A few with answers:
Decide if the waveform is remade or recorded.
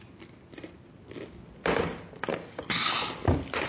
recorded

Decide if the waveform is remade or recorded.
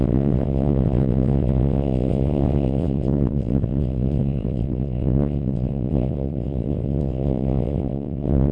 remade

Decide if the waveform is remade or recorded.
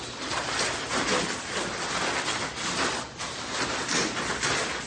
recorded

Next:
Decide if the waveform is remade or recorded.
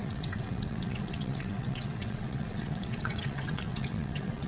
remade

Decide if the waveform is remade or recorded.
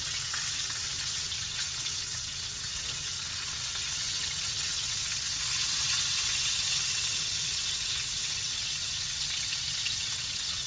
remade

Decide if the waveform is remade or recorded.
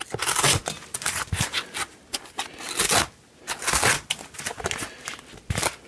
recorded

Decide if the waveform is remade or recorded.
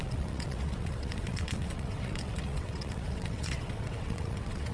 remade